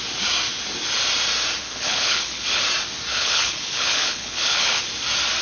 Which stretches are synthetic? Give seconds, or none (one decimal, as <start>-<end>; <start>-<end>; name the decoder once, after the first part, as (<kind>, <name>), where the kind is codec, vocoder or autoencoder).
1.6-2.6 (codec, HILCodec); 3.1-4.8